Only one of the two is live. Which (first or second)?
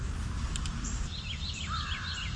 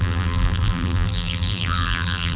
first